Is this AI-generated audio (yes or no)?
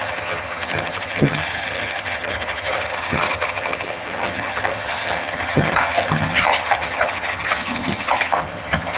yes